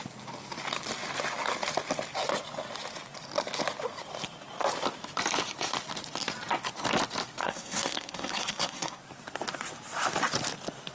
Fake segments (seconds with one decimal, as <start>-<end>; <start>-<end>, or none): 7.4-9.0